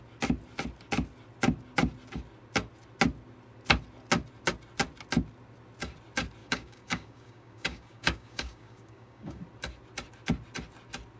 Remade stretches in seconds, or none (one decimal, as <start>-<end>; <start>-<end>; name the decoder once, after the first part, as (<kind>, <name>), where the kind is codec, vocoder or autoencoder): 6.4-9.4 (codec, DAC)